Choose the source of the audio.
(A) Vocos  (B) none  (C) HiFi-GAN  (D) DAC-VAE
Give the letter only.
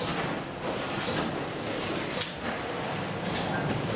B